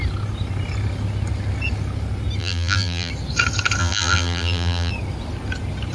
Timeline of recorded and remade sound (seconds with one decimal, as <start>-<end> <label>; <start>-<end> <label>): 0.0-2.4 recorded; 2.4-3.1 remade; 3.1-3.8 recorded; 3.8-4.9 remade; 4.9-5.9 recorded